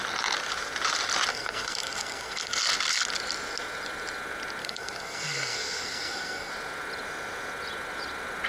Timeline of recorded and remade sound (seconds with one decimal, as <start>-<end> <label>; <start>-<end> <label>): 0.0-1.3 recorded; 1.3-2.6 remade; 2.6-4.6 recorded; 4.6-6.5 remade; 6.5-8.5 recorded